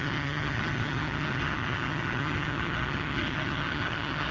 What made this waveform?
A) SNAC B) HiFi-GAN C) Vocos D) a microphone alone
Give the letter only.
B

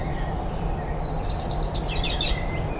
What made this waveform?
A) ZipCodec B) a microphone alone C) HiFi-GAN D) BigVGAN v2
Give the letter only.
B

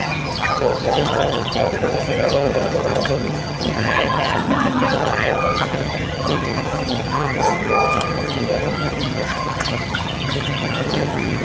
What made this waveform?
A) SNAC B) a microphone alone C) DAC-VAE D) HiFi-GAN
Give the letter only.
D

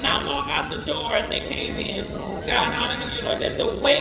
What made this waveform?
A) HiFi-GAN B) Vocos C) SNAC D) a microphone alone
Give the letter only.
A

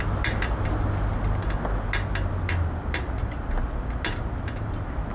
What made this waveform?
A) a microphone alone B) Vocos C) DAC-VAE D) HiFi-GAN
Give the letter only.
A